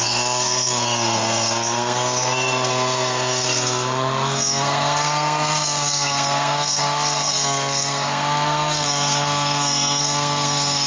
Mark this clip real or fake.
fake